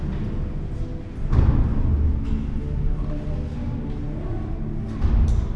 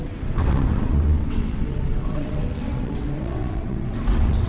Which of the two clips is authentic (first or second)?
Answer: first